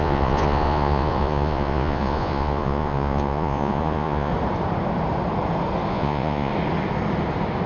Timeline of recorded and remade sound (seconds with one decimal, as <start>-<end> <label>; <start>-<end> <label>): 0.0-4.3 remade; 4.3-5.9 recorded; 5.9-6.5 remade; 6.5-7.7 recorded

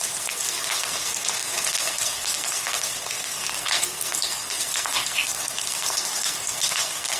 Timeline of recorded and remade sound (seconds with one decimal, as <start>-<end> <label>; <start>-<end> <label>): 0.0-7.2 remade

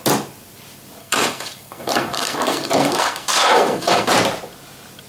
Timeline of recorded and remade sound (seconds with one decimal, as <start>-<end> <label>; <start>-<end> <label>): 0.0-1.0 recorded; 1.0-4.1 remade; 4.1-5.1 recorded

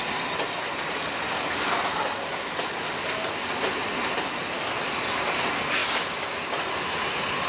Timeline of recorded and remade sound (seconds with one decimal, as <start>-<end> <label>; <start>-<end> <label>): 0.0-7.5 recorded

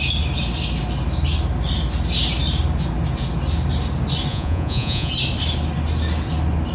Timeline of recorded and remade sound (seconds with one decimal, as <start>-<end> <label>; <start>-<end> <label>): 0.0-4.3 recorded; 4.3-5.1 remade; 5.1-6.7 recorded

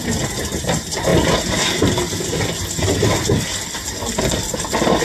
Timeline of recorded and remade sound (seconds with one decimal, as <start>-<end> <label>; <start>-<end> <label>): 0.0-5.0 recorded

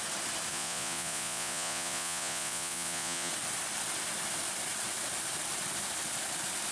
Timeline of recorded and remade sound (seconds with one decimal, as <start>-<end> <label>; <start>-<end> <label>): 0.0-0.5 recorded; 0.5-3.3 remade; 3.3-6.7 recorded